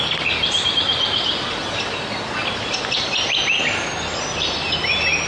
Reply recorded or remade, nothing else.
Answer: recorded